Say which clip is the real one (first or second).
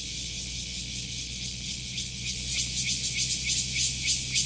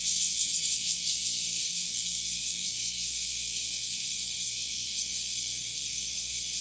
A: first